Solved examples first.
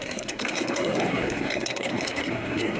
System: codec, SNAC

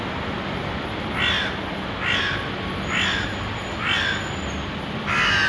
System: none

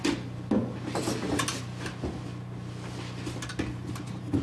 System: none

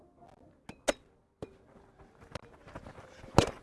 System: none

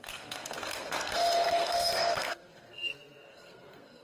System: codec, SNAC